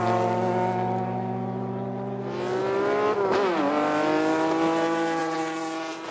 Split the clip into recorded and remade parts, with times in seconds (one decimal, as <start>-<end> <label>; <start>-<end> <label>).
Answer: 0.0-5.2 recorded; 5.2-6.1 remade